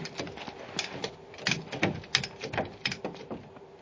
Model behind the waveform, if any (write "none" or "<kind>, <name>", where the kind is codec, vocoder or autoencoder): none